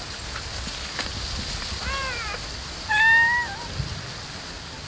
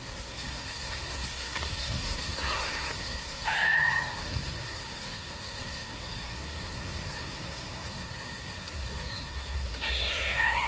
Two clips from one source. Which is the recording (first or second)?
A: first